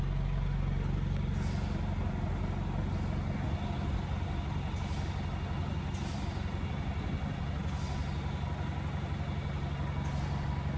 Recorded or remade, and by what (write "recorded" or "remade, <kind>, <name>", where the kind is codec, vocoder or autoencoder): recorded